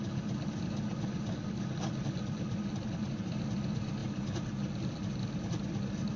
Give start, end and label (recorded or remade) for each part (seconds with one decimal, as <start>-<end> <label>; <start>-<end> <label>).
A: 0.0-6.2 recorded